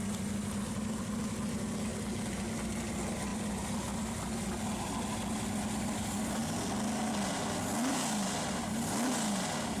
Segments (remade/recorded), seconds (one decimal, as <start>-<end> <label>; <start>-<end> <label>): 0.0-9.8 recorded